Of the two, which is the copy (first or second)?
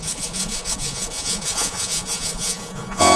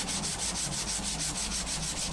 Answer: first